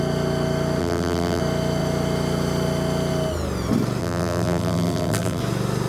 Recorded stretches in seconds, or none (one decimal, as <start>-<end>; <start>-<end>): 0.0-0.8; 1.4-4.0; 5.4-5.9